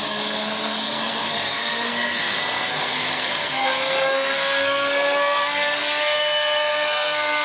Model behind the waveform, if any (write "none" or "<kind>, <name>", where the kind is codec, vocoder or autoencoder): codec, SNAC